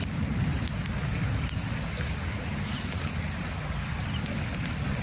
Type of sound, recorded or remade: recorded